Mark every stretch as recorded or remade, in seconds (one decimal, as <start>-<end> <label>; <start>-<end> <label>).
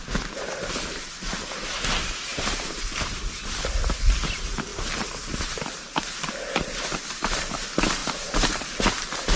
0.0-9.4 recorded